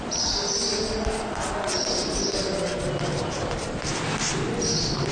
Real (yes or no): yes